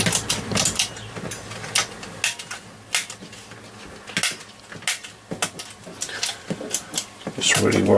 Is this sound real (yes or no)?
yes